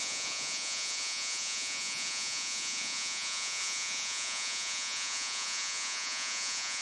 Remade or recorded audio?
remade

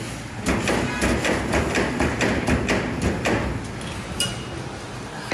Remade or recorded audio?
recorded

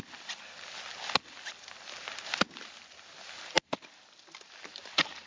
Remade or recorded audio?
recorded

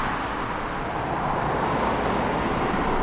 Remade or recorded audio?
recorded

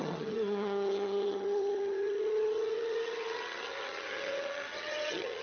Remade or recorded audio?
remade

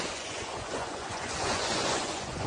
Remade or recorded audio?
remade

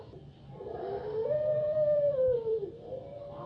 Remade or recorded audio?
remade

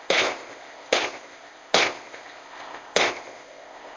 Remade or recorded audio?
remade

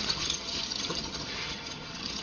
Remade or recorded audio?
remade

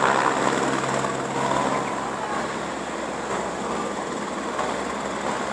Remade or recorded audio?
recorded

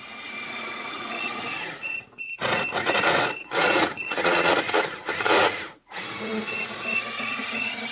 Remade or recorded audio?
remade